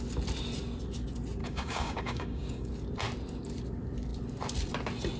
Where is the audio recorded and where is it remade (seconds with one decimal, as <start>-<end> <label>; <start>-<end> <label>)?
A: 0.0-1.4 recorded; 1.4-2.7 remade; 2.7-5.2 recorded